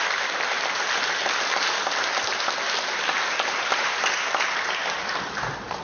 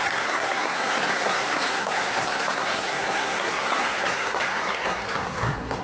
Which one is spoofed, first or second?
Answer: second